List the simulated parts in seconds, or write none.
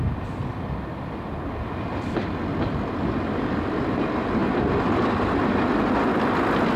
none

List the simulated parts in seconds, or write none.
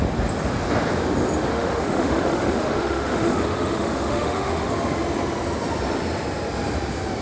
1.5-4.7 (autoencoder, DAC-VAE)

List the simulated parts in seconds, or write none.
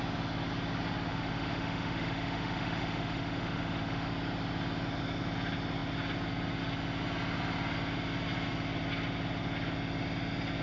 1.1-4.1 (autoencoder, DAC-VAE)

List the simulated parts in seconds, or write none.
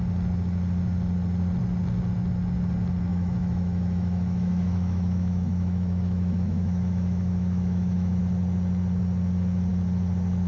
3.1-8.2 (autoencoder, DAC-VAE)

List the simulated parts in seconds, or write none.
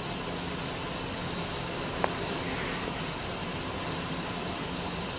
none